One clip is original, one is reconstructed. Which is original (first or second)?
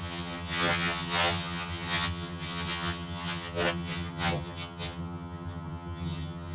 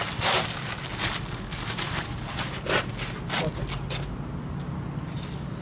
second